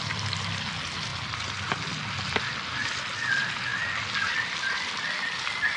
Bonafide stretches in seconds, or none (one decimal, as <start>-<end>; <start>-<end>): 0.0-1.1; 1.8-5.8